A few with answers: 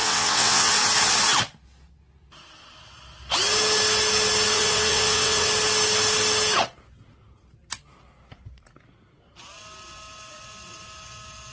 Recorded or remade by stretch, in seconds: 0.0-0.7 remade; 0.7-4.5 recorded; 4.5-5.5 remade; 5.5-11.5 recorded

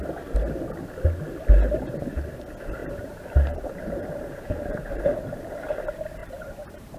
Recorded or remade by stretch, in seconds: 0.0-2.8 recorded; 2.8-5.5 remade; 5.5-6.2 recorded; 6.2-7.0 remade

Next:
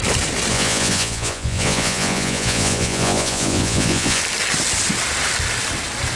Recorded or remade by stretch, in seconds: 0.0-0.5 recorded; 0.5-4.2 remade; 4.2-6.2 recorded